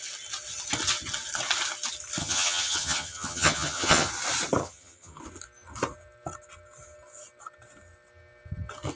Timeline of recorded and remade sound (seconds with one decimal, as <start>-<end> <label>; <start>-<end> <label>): 0.0-2.2 recorded; 2.2-4.1 remade; 4.1-4.6 recorded; 4.6-5.2 remade; 5.2-9.0 recorded